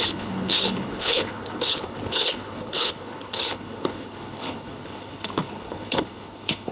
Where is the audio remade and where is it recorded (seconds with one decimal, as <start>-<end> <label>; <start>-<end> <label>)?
0.0-6.7 remade